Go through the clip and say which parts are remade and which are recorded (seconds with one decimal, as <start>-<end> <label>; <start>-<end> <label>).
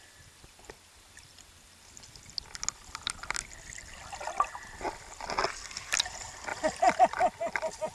0.0-7.9 recorded